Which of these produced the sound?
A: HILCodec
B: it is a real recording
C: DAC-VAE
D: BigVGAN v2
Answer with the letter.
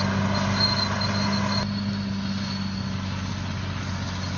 B